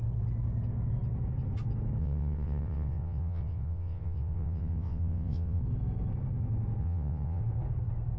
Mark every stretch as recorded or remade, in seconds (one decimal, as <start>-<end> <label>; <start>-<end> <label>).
0.0-2.0 recorded; 2.0-5.6 remade; 5.6-6.8 recorded; 6.8-7.4 remade; 7.4-8.2 recorded